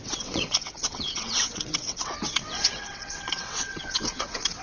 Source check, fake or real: fake